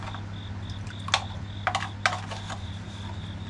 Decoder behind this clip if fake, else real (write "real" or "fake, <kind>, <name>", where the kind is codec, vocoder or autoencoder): real